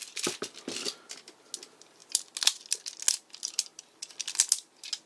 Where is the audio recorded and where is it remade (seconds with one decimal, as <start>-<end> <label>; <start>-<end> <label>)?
0.0-5.1 recorded